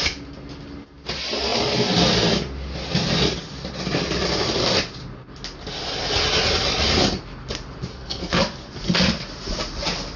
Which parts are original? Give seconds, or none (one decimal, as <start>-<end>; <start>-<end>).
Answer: 0.0-7.9; 8.4-10.2